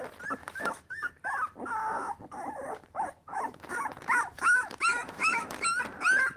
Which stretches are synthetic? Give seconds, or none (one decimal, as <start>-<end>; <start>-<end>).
0.4-1.1; 2.0-5.8